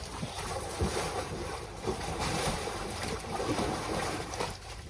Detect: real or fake fake